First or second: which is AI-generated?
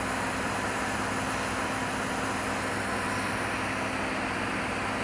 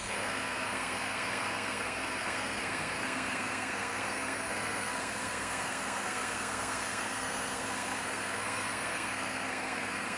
second